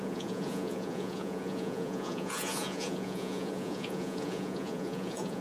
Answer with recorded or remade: remade